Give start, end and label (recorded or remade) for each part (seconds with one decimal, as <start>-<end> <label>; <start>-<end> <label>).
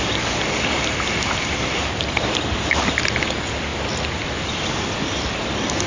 0.0-5.9 recorded